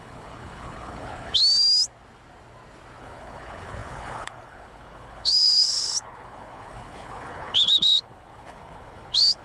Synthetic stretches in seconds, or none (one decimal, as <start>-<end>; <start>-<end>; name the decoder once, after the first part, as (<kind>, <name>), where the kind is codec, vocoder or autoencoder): 0.0-1.4 (codec, HILCodec); 3.0-9.4